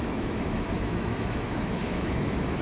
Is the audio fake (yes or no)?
yes